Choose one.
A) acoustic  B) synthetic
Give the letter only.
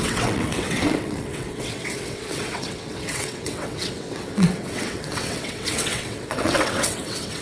B